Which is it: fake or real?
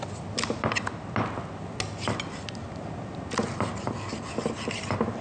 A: real